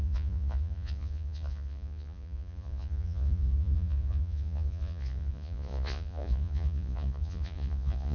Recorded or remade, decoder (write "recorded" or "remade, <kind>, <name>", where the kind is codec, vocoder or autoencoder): remade, vocoder, Vocos